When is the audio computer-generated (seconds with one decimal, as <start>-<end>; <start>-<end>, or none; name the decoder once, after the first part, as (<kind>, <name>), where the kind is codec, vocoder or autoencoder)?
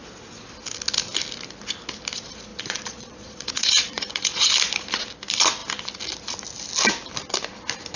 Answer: 2.5-4.5 (vocoder, Vocos)